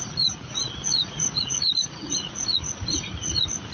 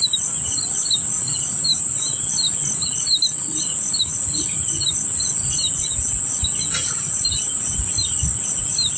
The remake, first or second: first